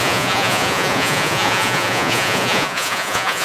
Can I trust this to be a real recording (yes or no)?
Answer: no